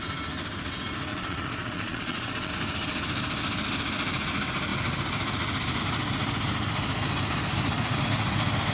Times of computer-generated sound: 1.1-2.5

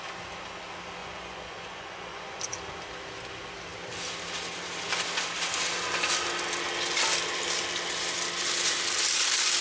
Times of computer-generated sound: 1.0-2.4

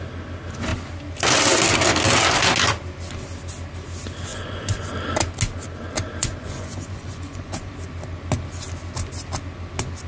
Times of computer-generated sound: 4.3-4.9; 6.2-7.7

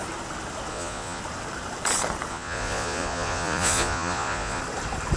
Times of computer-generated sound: 0.7-1.2; 2.3-4.6

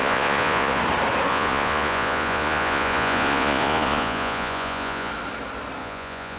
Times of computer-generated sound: 0.0-0.8; 1.3-5.1; 5.8-6.4

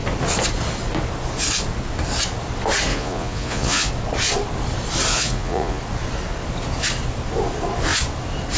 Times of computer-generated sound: 2.9-3.9; 5.1-5.8

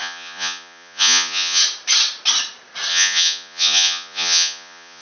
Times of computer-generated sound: 0.0-1.6; 2.9-5.0